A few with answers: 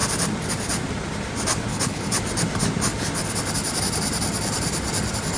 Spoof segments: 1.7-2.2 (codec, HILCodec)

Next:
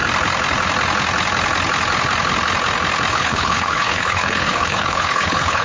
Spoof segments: 3.1-5.6 (codec, HILCodec)